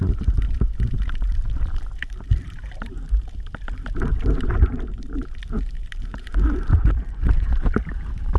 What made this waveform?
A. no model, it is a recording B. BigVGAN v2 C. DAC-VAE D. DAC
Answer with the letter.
B